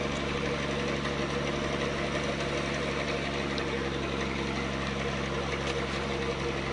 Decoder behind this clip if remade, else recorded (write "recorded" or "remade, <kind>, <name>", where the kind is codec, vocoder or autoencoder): recorded